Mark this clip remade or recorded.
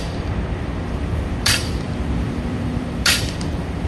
remade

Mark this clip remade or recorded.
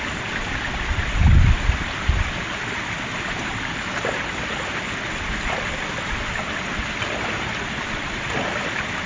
recorded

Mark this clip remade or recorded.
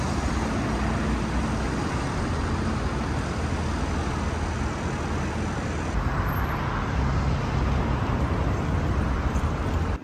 recorded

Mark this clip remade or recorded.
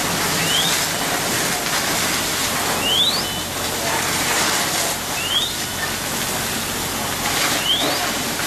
recorded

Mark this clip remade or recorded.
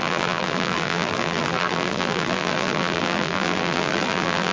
remade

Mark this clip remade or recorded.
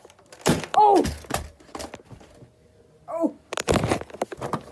recorded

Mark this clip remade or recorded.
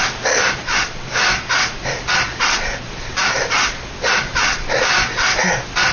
remade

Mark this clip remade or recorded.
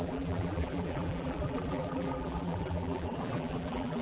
remade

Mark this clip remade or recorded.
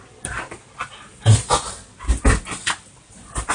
recorded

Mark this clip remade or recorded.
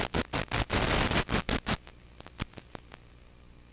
recorded